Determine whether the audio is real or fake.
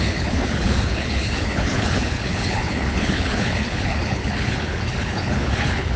fake